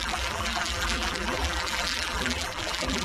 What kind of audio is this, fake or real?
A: fake